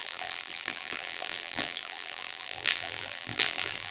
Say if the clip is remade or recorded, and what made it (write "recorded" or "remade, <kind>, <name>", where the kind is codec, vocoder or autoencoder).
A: remade, vocoder, BigVGAN v2